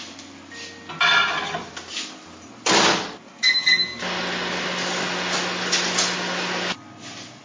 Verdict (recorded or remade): recorded